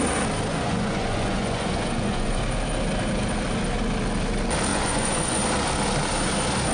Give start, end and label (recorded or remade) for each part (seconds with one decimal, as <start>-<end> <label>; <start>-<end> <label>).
0.0-0.5 recorded; 0.5-2.4 remade; 2.4-4.7 recorded; 4.7-5.4 remade; 5.4-6.7 recorded